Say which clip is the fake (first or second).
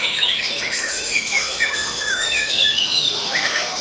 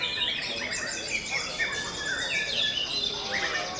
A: first